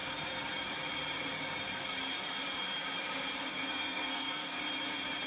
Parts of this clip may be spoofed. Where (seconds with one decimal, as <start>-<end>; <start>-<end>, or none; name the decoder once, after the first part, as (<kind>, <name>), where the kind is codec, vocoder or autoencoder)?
3.5-4.6 (codec, SNAC)